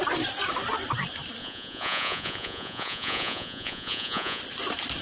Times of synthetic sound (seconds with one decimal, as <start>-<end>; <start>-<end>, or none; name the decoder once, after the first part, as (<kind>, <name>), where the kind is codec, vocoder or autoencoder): 1.4-4.4 (vocoder, Vocos)